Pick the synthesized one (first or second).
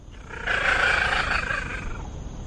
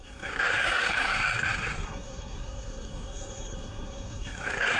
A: second